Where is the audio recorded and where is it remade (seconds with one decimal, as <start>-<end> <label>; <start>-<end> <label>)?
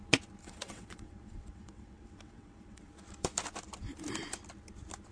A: 0.0-0.4 recorded; 0.4-2.9 remade; 2.9-5.1 recorded